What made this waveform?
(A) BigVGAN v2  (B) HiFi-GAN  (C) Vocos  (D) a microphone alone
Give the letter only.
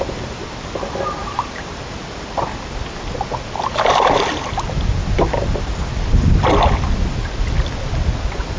D